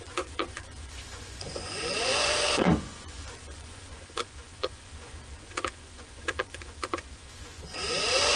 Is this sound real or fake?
fake